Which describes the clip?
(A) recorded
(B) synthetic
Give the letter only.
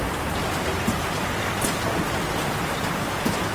A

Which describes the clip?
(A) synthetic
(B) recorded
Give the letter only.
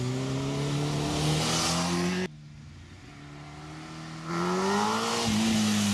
B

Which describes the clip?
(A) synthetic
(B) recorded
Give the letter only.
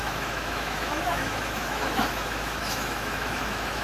A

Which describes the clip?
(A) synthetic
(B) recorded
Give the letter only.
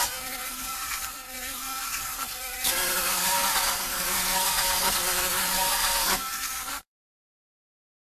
A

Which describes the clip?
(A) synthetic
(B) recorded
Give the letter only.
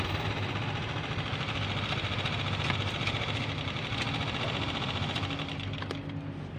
B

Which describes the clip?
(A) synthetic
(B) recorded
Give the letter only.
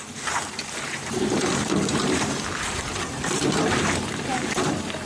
A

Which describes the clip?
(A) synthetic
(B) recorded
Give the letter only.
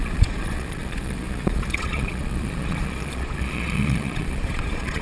A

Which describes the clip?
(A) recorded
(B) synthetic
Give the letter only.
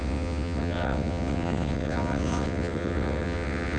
B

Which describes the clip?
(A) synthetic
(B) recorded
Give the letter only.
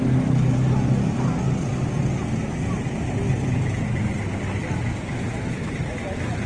B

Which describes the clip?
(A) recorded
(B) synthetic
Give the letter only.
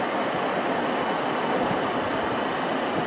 A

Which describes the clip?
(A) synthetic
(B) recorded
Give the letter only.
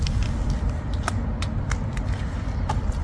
B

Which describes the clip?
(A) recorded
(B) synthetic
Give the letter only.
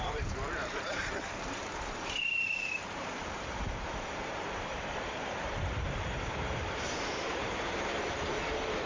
B